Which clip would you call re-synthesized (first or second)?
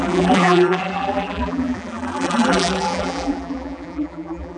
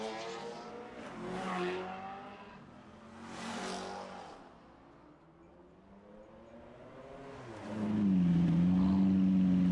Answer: first